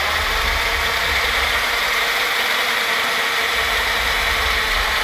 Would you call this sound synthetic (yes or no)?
yes